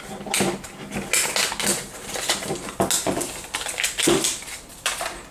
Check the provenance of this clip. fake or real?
real